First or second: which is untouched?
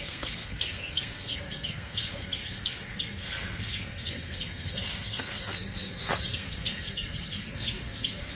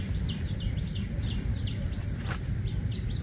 second